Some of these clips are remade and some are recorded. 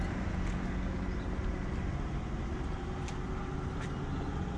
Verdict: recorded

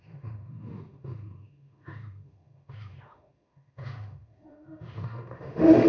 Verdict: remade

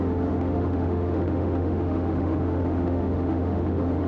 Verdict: remade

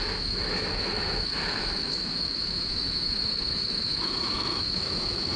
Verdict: remade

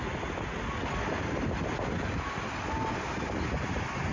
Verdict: recorded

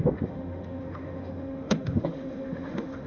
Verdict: remade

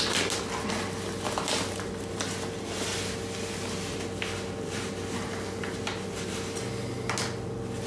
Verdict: recorded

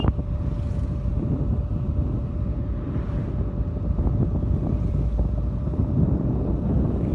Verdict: recorded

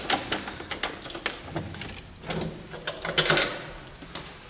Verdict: recorded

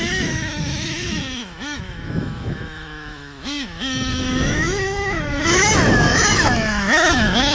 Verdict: remade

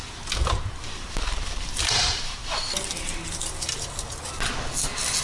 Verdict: recorded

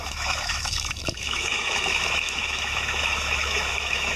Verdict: remade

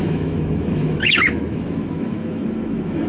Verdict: remade